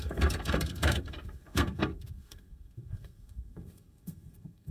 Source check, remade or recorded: remade